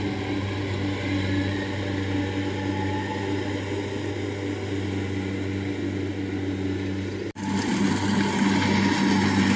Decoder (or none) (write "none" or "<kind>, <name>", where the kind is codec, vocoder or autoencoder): none